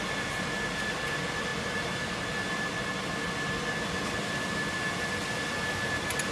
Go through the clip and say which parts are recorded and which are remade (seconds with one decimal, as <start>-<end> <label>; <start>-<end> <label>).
0.0-6.3 recorded